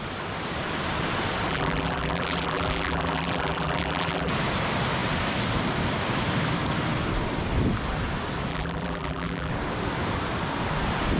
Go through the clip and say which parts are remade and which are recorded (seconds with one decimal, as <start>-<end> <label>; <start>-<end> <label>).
0.0-1.5 recorded; 1.5-4.3 remade; 4.3-8.5 recorded; 8.5-9.5 remade; 9.5-11.2 recorded